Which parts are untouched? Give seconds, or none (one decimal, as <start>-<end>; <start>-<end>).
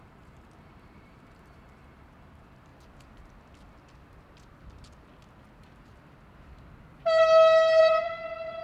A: 2.7-7.8